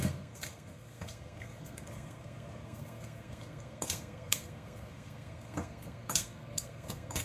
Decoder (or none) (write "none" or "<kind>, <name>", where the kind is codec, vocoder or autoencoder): codec, SNAC